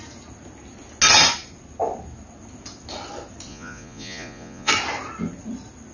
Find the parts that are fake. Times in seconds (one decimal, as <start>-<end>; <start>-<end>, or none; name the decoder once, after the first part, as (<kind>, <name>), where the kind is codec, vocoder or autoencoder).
3.5-4.7 (vocoder, Vocos)